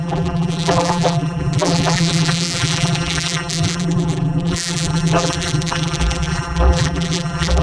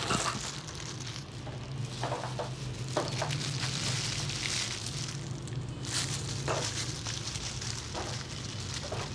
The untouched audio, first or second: second